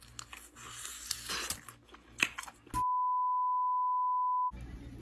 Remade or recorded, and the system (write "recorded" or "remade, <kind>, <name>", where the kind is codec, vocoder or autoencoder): recorded